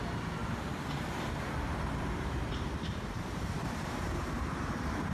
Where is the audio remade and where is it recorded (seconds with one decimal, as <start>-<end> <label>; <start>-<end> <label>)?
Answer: 0.0-0.4 remade; 0.4-1.1 recorded; 1.1-5.1 remade